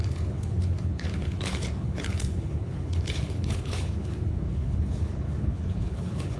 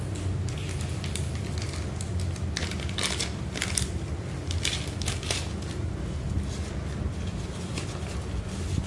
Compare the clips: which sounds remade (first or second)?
first